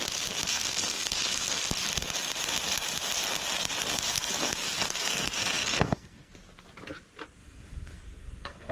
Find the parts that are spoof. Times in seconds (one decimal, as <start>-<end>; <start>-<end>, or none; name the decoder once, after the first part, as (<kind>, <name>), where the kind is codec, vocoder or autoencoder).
0.5-1.6 (codec, SNAC); 4.1-6.3; 7.4-8.7